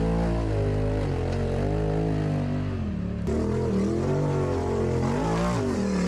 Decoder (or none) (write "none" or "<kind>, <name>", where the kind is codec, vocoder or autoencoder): none